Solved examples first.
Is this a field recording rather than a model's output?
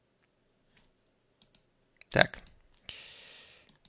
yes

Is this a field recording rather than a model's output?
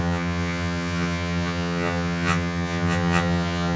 no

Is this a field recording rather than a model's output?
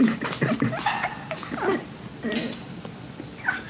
yes